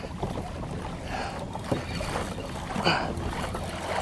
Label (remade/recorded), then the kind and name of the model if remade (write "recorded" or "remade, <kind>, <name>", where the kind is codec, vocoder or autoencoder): recorded